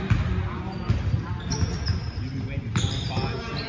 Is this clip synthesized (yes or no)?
no